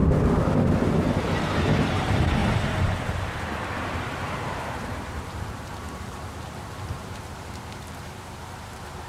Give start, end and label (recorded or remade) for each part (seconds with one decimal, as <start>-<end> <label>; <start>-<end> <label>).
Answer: 0.0-1.2 recorded; 1.2-9.1 remade